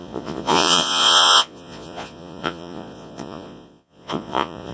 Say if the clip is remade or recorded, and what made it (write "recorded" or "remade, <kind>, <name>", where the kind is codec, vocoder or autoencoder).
remade, vocoder, Vocos